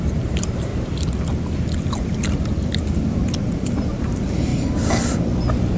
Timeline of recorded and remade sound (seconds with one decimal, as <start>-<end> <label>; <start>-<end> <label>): 0.0-0.7 remade; 0.7-3.6 recorded; 3.6-4.5 remade; 4.5-5.8 recorded